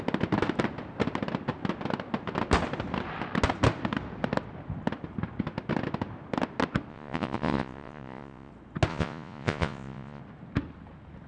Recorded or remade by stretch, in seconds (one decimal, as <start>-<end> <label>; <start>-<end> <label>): 0.0-6.9 recorded; 6.9-8.5 remade; 8.5-8.9 recorded; 8.9-10.2 remade; 10.2-11.3 recorded